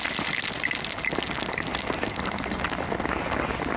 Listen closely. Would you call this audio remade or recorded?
recorded